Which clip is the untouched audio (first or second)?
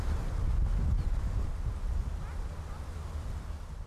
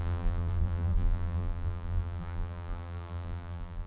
first